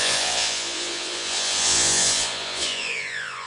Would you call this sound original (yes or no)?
no